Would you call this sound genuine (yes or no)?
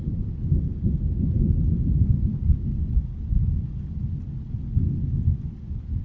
yes